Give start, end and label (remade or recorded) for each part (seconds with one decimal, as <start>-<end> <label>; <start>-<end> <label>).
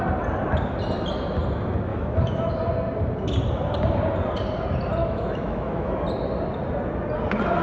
0.0-1.9 recorded; 1.9-2.5 remade; 2.5-5.0 recorded; 5.0-6.0 remade; 6.0-7.6 recorded